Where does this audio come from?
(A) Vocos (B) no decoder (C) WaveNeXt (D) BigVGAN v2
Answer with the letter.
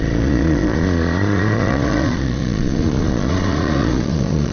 A